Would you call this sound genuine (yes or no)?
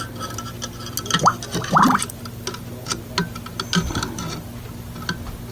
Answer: yes